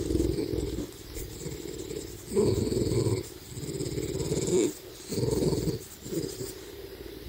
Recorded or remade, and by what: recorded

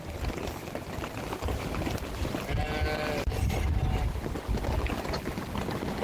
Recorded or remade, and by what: recorded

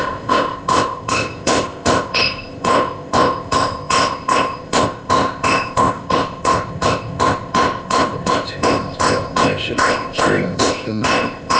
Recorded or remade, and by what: remade, codec, ZipCodec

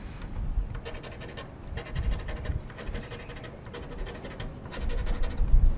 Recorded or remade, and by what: recorded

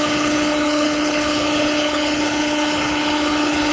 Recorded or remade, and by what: remade, codec, HILCodec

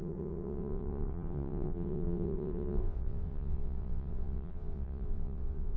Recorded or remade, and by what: remade, vocoder, WaveNeXt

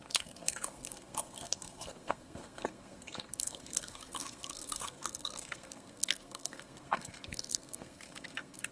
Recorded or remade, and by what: remade, codec, SNAC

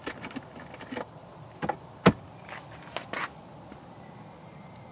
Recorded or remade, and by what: recorded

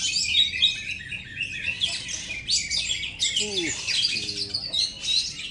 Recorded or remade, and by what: recorded